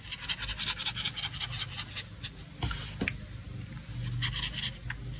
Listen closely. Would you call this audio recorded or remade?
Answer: recorded